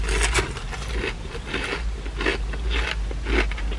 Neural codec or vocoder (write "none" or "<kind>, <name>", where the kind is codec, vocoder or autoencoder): none